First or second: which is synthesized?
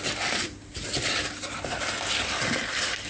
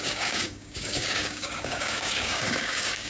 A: second